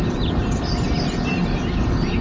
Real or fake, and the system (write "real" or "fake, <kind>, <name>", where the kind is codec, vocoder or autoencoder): real